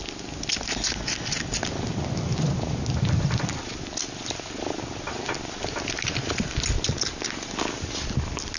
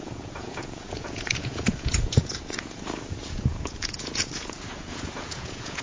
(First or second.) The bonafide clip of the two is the first